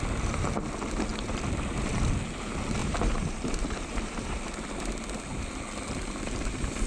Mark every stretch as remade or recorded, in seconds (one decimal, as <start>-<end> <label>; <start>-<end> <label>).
0.0-1.1 recorded; 1.1-2.1 remade; 2.1-2.8 recorded; 2.8-4.4 remade; 4.4-6.9 recorded